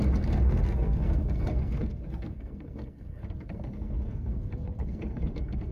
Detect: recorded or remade remade